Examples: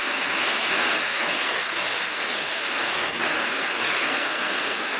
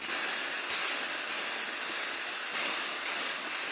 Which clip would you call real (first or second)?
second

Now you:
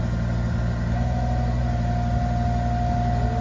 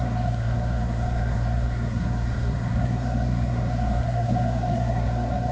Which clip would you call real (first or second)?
first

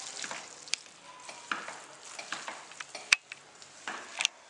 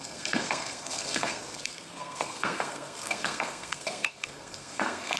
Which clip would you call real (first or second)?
first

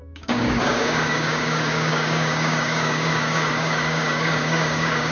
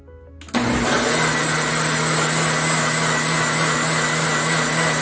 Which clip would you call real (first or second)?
second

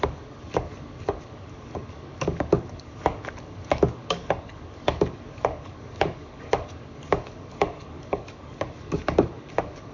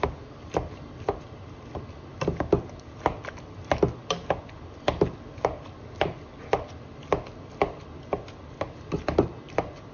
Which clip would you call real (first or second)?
second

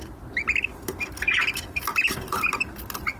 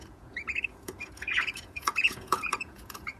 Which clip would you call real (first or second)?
first